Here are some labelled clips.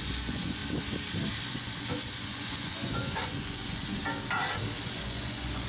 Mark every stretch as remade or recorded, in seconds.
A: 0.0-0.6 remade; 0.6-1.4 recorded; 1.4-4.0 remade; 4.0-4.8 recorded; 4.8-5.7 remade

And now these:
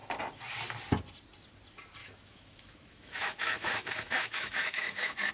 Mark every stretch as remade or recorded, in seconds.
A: 0.0-2.0 recorded; 2.0-5.3 remade

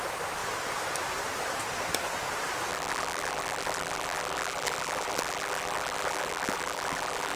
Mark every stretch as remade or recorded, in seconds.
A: 0.0-2.7 recorded; 2.7-7.4 remade

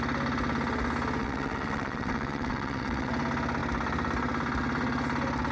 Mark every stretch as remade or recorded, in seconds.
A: 0.0-1.2 recorded; 1.2-3.1 remade; 3.1-5.5 recorded